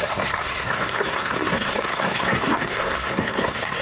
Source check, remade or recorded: remade